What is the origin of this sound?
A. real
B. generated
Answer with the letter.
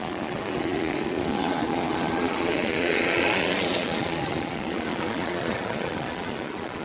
B